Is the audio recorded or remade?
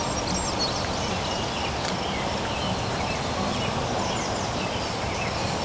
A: recorded